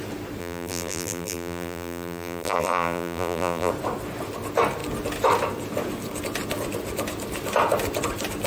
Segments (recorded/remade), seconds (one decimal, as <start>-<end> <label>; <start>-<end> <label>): 0.0-0.4 recorded; 0.4-3.7 remade; 3.7-8.5 recorded